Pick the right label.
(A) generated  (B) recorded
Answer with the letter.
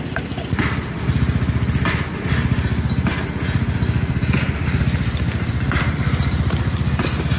B